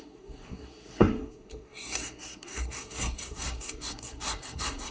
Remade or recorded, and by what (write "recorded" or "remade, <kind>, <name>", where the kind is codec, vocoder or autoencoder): remade, codec, SNAC